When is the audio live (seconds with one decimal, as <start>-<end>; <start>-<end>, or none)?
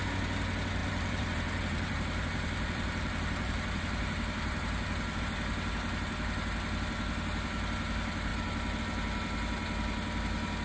0.0-0.8; 5.2-8.3; 8.8-10.6